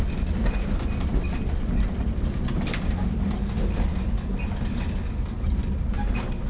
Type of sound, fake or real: real